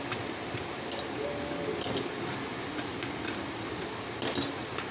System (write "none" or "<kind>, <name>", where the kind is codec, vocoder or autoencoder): none